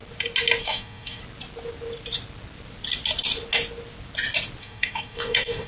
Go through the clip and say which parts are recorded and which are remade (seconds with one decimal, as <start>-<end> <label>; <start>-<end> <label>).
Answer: 0.0-0.6 recorded; 0.6-1.2 remade; 1.2-4.6 recorded; 4.6-5.7 remade

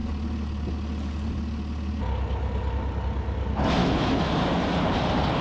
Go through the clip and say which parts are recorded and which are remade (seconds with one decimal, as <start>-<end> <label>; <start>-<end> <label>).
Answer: 0.0-3.8 recorded; 3.8-4.3 remade; 4.3-5.4 recorded

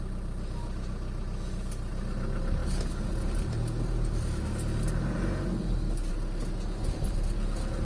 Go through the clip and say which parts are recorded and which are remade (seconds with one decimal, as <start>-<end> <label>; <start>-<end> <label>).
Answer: 0.0-7.8 recorded